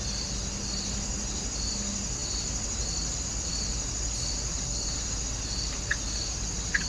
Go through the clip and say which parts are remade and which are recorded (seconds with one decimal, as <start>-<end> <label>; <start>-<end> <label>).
0.0-6.9 recorded